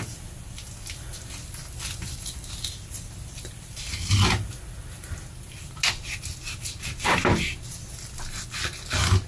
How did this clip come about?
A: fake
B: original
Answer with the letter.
B